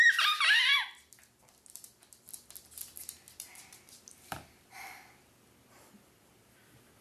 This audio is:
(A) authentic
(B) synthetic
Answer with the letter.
A